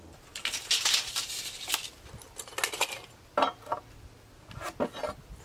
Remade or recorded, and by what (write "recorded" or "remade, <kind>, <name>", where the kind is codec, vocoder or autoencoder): recorded